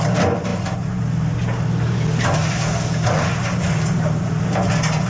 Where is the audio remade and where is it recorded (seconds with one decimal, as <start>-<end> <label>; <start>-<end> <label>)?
0.0-5.1 recorded